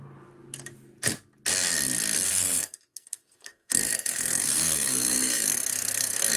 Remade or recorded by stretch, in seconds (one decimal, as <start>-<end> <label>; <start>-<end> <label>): 0.0-2.3 recorded; 2.3-6.4 remade